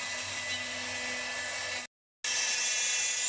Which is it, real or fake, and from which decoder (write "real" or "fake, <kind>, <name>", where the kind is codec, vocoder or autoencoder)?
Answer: real